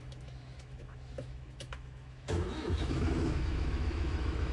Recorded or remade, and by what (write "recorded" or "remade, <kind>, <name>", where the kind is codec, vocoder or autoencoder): remade, autoencoder, DAC-VAE